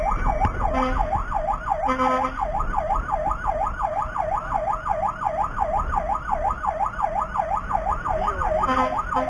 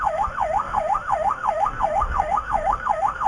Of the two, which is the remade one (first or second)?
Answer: second